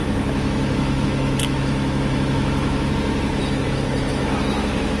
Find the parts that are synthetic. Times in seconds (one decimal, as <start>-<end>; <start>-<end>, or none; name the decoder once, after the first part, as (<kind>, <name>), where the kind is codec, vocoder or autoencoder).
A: 0.0-2.9 (autoencoder, DAC-VAE); 3.4-5.0

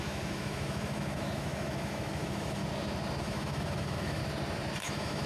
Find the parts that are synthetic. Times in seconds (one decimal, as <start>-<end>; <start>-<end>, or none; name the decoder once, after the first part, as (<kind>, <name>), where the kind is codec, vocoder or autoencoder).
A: 0.0-2.6 (autoencoder, DAC-VAE); 3.2-4.2; 4.8-5.3

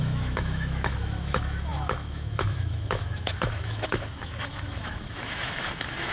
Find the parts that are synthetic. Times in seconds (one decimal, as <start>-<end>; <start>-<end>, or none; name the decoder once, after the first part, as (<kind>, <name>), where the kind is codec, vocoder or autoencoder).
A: 0.0-6.1 (autoencoder, DAC-VAE)

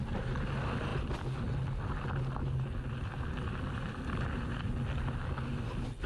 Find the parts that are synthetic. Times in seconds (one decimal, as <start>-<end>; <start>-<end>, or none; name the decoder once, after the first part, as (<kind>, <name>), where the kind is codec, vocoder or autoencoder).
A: none